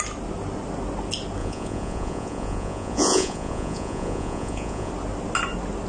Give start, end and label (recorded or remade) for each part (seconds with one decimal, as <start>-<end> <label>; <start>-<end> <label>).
0.0-1.4 recorded; 1.4-4.9 remade; 4.9-5.9 recorded